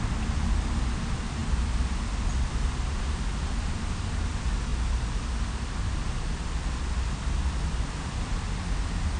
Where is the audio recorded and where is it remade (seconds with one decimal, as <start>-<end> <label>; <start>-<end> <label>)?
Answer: 0.0-9.2 recorded